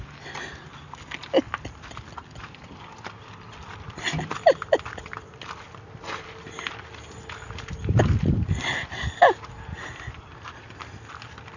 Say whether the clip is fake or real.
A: real